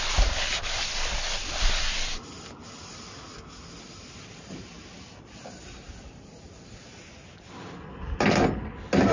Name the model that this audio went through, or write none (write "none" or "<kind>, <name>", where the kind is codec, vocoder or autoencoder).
none